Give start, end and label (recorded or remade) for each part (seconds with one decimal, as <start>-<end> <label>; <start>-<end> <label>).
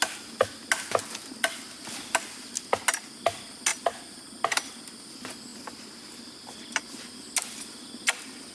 0.0-8.5 recorded